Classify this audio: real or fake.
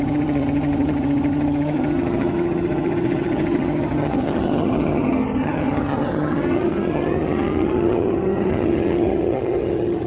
fake